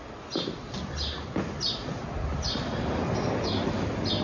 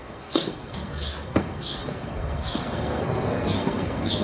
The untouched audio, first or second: first